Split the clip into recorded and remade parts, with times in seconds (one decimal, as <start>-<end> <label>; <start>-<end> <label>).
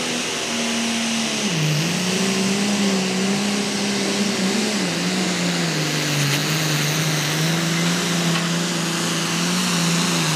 0.0-10.4 recorded